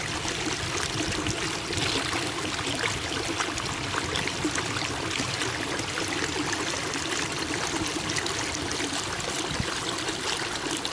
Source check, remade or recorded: recorded